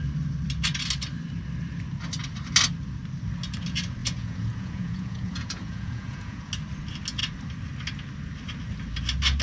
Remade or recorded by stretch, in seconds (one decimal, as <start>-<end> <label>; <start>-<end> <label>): 0.0-4.0 recorded; 4.0-6.5 remade; 6.5-9.4 recorded